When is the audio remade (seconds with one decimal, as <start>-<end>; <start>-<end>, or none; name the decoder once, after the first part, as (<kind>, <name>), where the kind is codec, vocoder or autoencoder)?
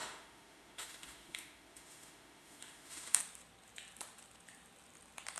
0.0-3.2 (autoencoder, DAC-VAE)